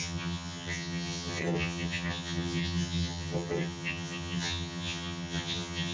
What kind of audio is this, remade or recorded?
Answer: remade